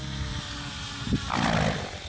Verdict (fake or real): real